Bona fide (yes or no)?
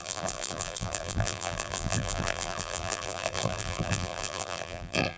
no